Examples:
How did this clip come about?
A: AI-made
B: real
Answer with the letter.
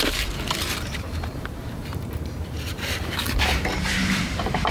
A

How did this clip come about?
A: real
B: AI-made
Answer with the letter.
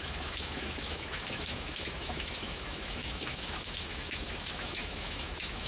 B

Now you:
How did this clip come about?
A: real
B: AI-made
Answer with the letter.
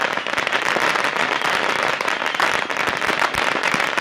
B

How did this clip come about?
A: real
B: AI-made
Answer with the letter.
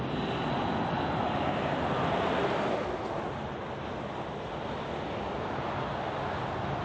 A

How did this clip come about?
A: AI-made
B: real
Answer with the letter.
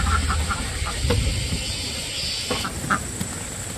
B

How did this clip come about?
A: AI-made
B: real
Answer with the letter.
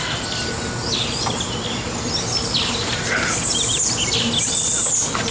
B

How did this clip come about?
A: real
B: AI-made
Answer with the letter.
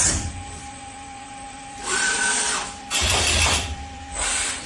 B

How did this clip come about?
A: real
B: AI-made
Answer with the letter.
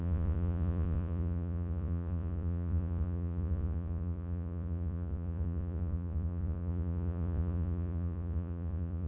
B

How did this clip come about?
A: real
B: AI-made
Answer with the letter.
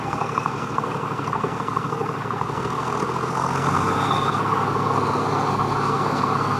B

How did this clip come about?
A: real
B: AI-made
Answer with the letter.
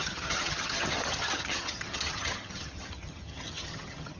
B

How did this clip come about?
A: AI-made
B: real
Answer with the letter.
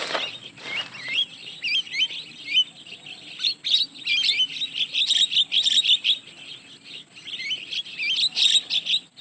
B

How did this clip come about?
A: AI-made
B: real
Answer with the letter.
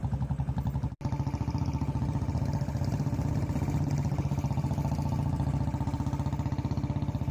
B